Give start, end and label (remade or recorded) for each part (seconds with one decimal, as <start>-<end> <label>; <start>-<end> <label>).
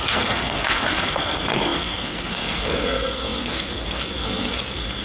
0.0-5.0 remade